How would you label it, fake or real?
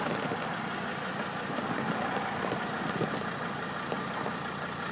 real